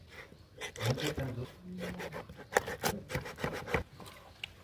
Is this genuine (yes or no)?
yes